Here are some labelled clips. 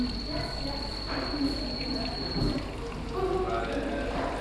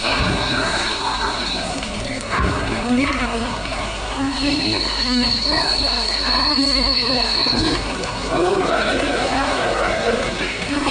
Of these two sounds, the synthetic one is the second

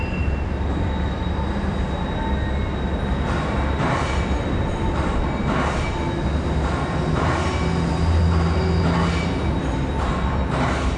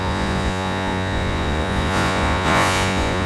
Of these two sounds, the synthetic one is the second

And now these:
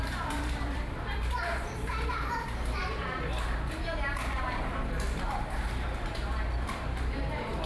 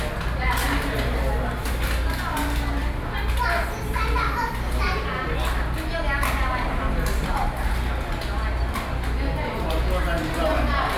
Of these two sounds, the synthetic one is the first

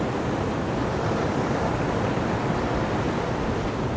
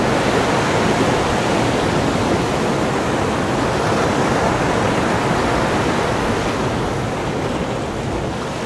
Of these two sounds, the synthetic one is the first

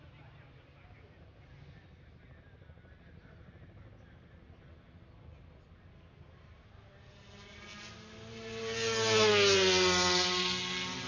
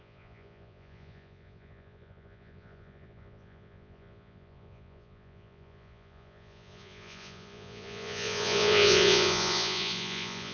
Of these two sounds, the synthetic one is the second